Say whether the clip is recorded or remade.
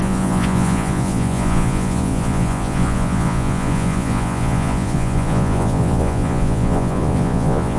remade